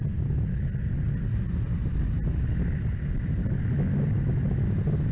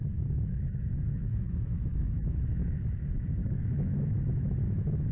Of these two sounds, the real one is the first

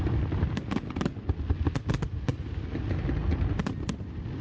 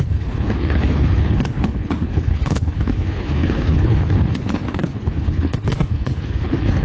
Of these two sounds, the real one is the first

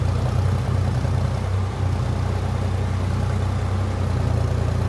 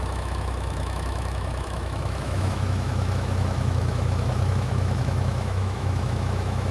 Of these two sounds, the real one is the first